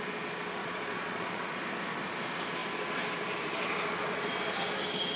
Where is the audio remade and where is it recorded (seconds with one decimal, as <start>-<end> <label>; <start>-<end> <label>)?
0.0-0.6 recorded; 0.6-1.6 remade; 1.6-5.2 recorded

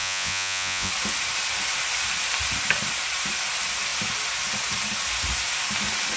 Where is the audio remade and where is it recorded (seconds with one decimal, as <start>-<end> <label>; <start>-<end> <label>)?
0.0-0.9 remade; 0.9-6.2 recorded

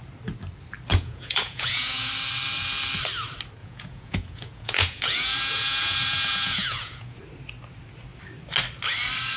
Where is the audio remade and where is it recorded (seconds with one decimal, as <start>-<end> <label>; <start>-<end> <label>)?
0.0-0.9 recorded; 0.9-2.1 remade; 2.1-3.6 recorded; 3.6-7.2 remade; 7.2-9.4 recorded

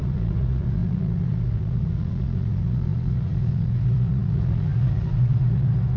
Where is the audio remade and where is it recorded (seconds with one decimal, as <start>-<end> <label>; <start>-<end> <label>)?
0.0-6.0 remade